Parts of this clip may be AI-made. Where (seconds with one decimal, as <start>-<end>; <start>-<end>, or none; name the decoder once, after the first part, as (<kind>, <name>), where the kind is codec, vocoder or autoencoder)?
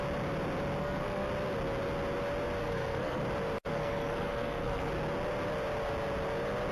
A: 0.8-1.3 (codec, SNAC); 2.6-3.2; 3.7-4.9